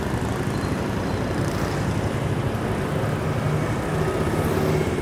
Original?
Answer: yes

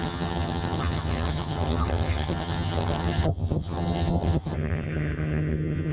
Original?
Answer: no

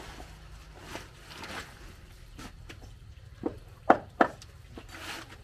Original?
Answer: yes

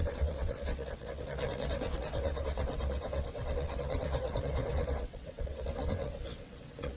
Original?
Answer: no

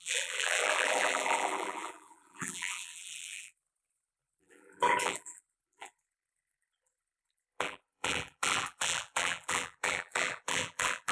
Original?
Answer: no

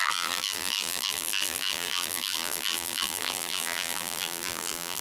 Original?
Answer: no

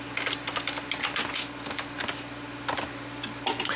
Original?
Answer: yes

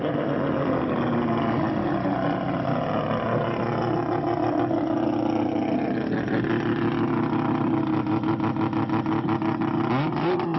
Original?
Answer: yes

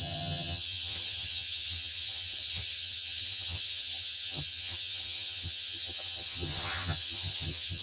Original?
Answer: no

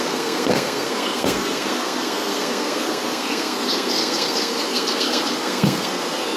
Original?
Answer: no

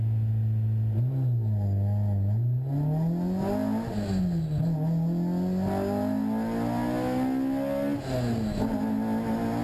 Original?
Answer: yes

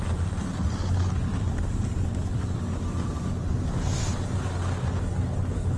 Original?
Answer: yes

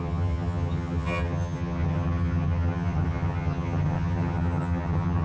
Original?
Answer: no